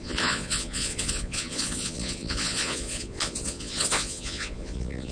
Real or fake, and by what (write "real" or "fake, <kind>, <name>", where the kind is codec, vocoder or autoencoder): fake, vocoder, Vocos